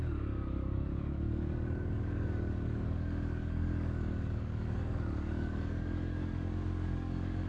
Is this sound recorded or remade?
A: remade